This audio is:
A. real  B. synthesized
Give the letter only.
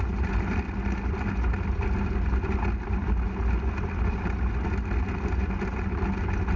A